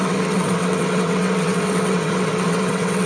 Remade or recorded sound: remade